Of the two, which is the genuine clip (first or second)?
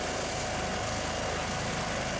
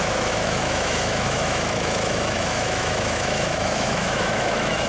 first